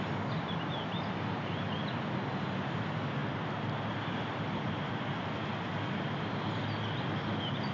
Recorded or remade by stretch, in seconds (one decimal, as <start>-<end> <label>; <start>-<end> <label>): 0.0-7.7 recorded